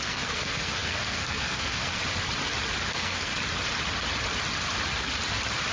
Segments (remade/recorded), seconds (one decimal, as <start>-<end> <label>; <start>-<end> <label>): 0.0-2.0 remade; 2.0-2.9 recorded; 2.9-3.3 remade; 3.3-5.7 recorded